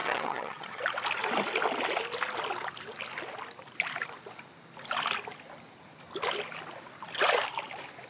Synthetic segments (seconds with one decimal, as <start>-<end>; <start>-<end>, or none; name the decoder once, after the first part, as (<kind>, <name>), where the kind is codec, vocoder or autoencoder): 0.0-0.8 (vocoder, HiFi-GAN)